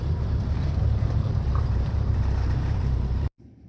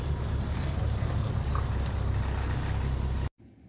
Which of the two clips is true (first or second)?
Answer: second